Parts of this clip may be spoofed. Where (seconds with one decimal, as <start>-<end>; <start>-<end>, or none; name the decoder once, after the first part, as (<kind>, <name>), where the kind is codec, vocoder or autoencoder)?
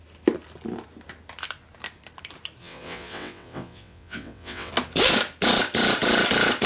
2.6-4.7 (vocoder, WaveNeXt)